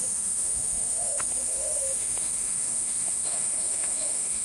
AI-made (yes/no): yes